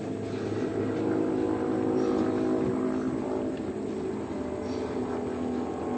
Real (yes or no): yes